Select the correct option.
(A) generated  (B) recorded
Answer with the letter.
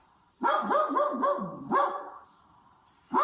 A